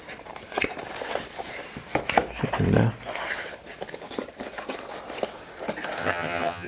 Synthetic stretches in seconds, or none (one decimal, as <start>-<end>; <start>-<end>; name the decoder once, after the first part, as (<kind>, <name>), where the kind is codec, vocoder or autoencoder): 6.0-6.7 (vocoder, HiFi-GAN)